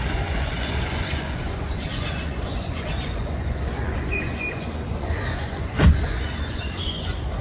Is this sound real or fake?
fake